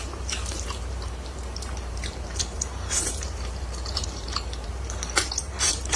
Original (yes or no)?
no